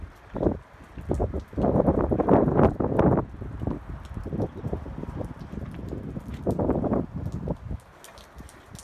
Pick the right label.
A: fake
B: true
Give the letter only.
B